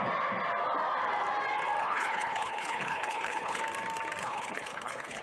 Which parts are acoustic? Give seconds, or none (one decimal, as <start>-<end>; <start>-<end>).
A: 0.0-1.8; 3.6-4.2